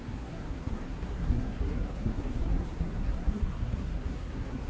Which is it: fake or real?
fake